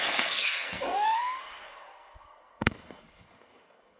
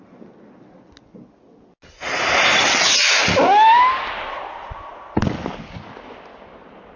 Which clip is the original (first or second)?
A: second